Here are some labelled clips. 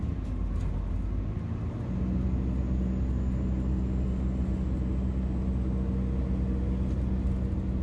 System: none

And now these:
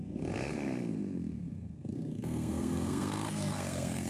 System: codec, SNAC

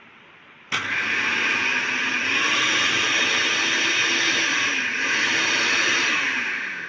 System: none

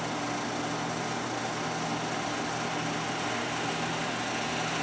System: none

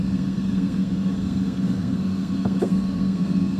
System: codec, SNAC